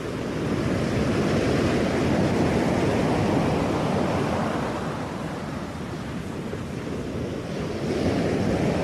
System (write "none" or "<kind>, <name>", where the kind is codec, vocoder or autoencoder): none